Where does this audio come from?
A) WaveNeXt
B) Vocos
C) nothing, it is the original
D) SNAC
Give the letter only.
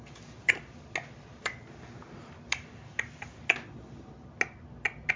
C